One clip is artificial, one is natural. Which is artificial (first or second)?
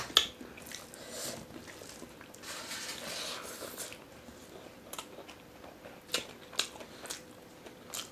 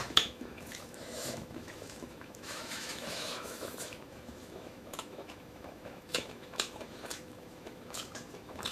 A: second